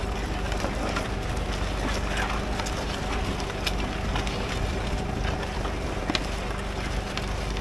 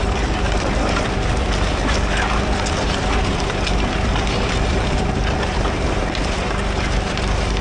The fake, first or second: second